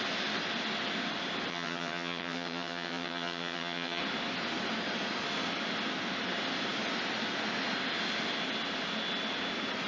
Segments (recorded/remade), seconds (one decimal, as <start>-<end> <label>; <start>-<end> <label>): 0.0-1.5 recorded; 1.5-4.0 remade; 4.0-9.9 recorded